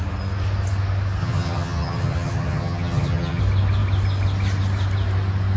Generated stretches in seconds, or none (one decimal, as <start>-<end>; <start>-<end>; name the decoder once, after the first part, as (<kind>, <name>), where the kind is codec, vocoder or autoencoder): 1.2-3.4 (vocoder, HiFi-GAN)